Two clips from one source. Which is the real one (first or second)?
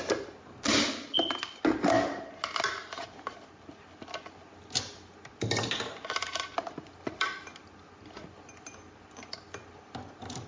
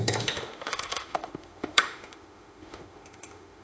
first